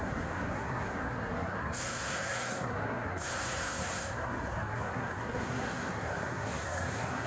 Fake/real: fake